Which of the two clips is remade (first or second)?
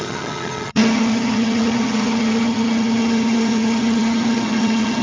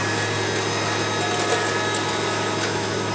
first